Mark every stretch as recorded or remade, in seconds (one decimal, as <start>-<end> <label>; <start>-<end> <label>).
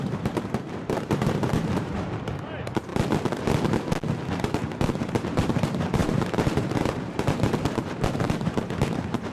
0.0-2.9 remade; 2.9-4.3 recorded; 4.3-9.3 remade